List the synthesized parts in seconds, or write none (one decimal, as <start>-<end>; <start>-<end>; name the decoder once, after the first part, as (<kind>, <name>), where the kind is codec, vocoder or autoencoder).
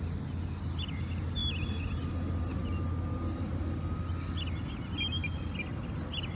none